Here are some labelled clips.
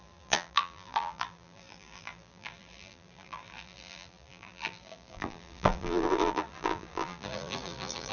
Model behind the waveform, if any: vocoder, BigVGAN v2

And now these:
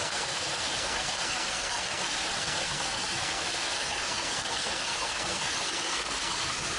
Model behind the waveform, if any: codec, SNAC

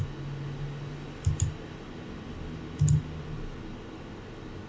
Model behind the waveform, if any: none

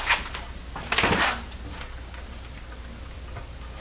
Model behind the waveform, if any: none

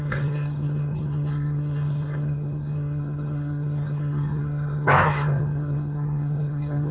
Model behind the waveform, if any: codec, SNAC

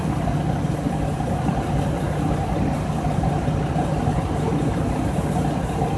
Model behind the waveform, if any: none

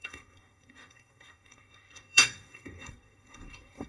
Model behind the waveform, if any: codec, SNAC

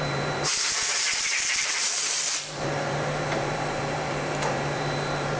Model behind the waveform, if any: vocoder, BigVGAN v2